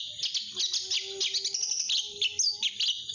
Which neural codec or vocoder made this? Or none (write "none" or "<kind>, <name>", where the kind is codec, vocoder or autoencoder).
none